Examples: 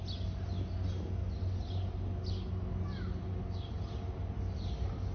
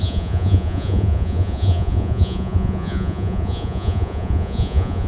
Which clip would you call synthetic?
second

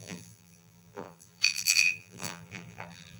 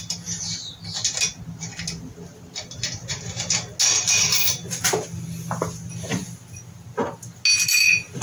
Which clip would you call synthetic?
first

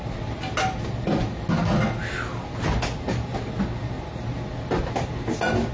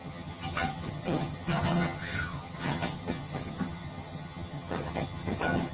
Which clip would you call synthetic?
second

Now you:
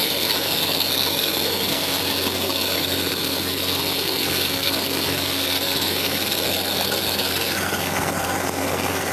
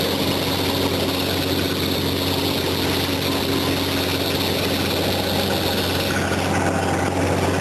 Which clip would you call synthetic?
first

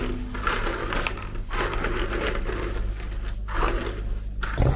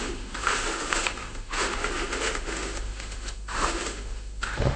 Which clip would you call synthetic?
second